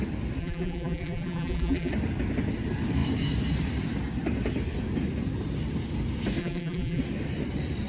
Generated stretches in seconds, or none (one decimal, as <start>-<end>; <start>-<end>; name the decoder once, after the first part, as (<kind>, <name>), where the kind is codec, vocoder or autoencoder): 0.4-1.9 (vocoder, BigVGAN v2); 6.4-7.0

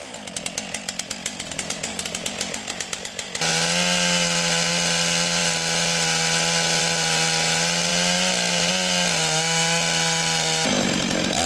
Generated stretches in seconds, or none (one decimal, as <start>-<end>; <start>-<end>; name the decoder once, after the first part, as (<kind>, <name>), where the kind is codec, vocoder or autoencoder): none

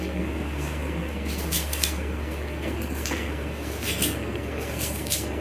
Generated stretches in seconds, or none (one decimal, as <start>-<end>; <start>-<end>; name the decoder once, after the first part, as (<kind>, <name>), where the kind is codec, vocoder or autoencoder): 0.0-5.4 (codec, SNAC)

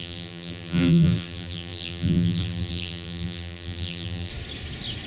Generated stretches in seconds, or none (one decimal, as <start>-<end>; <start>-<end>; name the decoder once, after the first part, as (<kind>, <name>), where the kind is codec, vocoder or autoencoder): 0.0-4.3 (vocoder, BigVGAN v2)

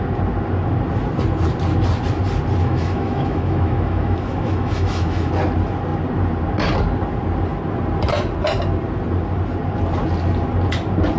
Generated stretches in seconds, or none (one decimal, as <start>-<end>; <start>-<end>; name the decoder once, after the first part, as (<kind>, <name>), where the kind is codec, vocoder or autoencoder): 2.6-5.3 (autoencoder, DAC-VAE)

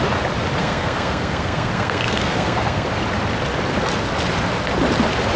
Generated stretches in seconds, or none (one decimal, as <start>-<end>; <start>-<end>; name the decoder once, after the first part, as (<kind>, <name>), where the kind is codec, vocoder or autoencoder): 0.6-2.9 (codec, SNAC)

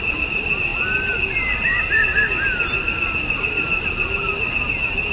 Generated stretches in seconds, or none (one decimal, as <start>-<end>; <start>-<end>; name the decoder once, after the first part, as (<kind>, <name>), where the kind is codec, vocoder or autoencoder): none

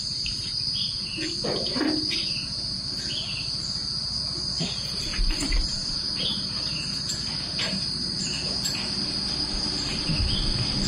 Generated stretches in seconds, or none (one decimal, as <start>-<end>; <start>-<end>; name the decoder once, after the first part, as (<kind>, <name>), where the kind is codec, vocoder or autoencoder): none